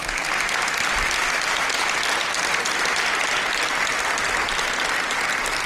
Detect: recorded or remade recorded